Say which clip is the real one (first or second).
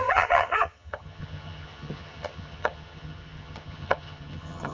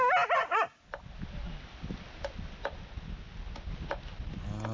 second